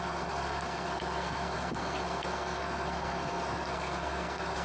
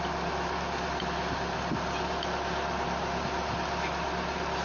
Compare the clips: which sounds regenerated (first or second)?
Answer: first